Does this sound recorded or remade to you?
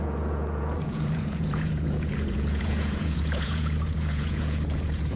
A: remade